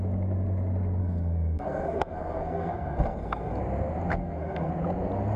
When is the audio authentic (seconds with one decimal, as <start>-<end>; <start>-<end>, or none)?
0.0-1.0; 3.6-4.1; 4.7-5.4